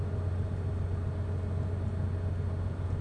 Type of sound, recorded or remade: recorded